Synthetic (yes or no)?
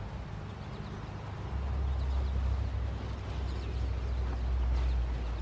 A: no